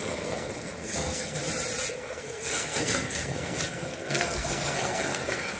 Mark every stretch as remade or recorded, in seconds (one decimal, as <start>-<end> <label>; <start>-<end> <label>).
0.0-1.4 remade; 1.4-1.9 recorded; 1.9-5.6 remade

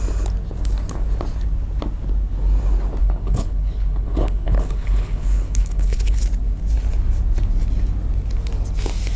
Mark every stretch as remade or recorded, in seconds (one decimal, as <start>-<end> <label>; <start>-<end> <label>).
0.0-3.0 recorded; 3.0-6.2 remade; 6.2-9.2 recorded

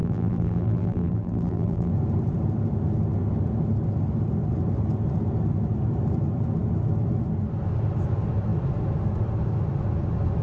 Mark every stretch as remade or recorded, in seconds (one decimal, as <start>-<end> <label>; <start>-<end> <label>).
0.0-1.9 remade; 1.9-10.4 recorded

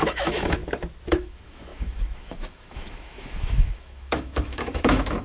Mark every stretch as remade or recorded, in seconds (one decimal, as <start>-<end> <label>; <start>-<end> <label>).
0.0-0.6 remade; 0.6-1.1 recorded; 1.1-5.2 remade

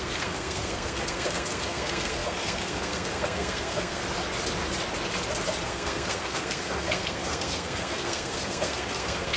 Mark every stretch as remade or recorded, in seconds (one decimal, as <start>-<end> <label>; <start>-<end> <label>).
0.0-4.0 remade; 4.0-5.6 recorded; 5.6-9.4 remade